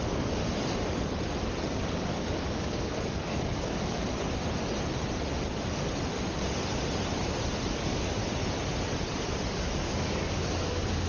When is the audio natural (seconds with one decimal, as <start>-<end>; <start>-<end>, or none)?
0.4-1.7; 4.1-7.8; 8.2-9.5